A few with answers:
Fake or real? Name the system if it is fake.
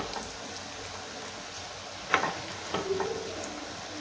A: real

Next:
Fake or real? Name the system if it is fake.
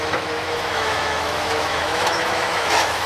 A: fake, autoencoder, DAC-VAE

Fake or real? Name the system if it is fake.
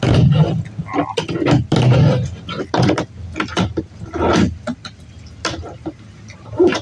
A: real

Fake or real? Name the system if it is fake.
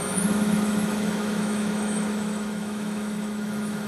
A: fake, autoencoder, DAC-VAE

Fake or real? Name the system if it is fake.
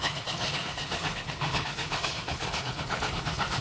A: fake, codec, HILCodec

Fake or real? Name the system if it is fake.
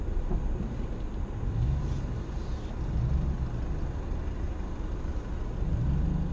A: real